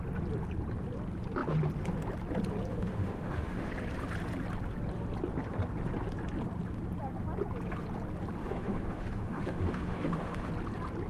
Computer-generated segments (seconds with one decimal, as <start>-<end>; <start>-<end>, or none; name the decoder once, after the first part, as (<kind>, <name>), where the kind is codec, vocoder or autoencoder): 2.7-3.7 (autoencoder, DAC-VAE); 8.4-10.5